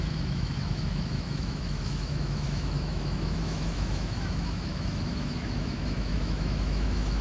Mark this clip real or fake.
fake